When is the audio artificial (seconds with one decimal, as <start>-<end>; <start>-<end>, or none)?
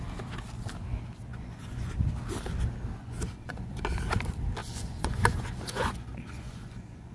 1.3-1.9; 3.0-3.8; 4.6-7.1